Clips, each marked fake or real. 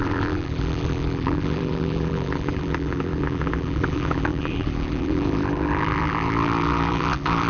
fake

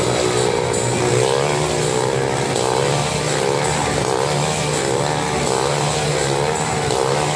real